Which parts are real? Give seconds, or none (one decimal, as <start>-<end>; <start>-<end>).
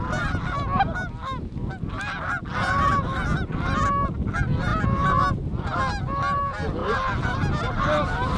0.0-8.4